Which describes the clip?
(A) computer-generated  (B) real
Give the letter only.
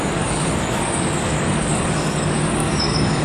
A